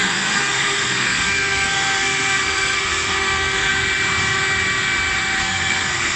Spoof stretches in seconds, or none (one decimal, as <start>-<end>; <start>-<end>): 0.0-3.7; 5.4-6.2